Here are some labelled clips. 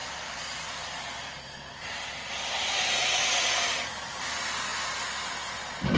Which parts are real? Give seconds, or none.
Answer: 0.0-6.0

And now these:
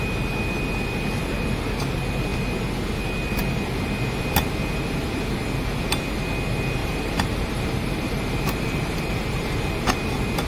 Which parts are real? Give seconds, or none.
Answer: 0.0-6.8; 10.1-10.5